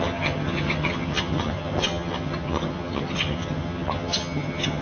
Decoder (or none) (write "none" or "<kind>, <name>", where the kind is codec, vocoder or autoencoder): vocoder, HiFi-GAN